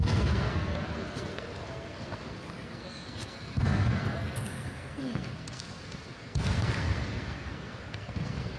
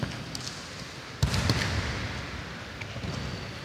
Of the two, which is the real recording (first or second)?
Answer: second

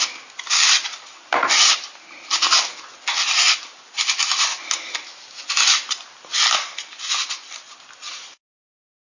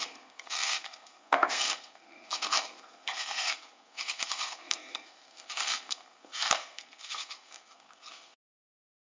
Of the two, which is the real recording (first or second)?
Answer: first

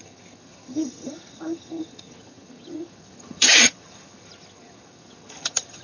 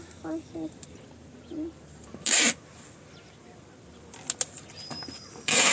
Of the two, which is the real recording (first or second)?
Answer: second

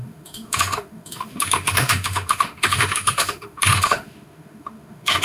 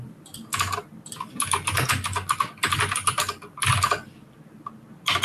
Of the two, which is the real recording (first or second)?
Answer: second